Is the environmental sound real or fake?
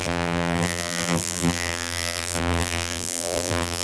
fake